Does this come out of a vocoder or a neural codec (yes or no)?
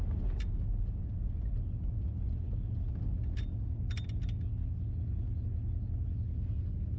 no